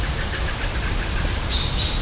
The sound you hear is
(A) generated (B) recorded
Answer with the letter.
B